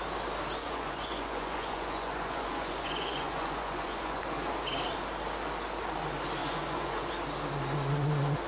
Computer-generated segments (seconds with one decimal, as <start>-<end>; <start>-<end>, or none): 0.6-4.2; 6.4-7.1